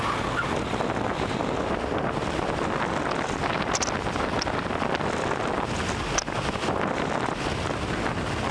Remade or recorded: recorded